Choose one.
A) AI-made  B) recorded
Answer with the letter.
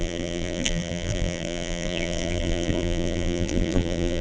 A